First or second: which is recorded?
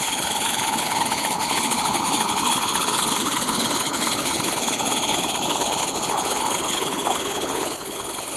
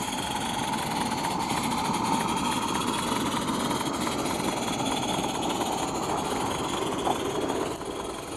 second